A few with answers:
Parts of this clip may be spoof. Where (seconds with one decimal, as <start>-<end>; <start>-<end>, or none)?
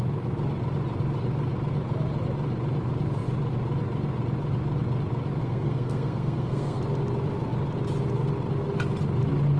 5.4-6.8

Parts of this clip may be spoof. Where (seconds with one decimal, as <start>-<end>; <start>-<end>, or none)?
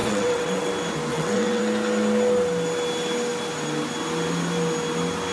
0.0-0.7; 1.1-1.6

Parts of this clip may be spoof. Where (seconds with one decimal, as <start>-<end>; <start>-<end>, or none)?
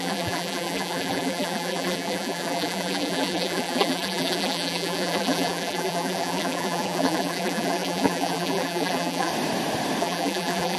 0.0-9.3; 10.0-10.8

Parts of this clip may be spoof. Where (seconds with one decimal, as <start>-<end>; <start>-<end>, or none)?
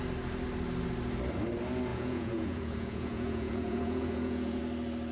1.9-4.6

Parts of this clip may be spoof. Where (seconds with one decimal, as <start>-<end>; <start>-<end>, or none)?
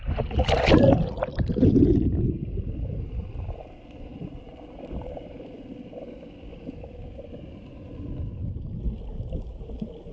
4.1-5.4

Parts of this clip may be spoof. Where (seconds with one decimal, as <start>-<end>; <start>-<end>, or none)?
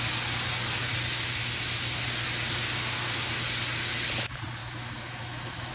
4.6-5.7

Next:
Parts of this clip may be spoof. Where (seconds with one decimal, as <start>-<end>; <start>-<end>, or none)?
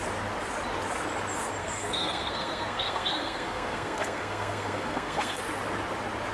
1.6-5.4